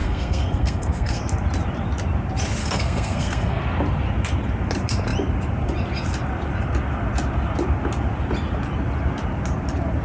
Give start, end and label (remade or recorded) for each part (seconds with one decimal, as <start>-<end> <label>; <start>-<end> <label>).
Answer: 0.0-1.2 remade; 1.2-2.6 recorded; 2.6-3.6 remade; 3.6-10.0 recorded